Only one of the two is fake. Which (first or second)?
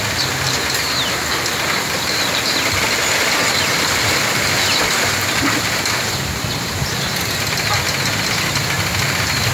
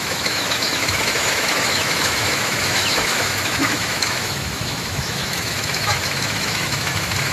second